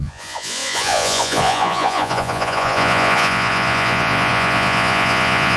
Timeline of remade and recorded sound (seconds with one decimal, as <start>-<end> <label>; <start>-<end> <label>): 0.0-5.6 remade